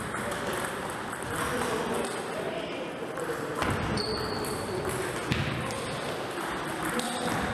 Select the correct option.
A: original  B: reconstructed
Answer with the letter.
B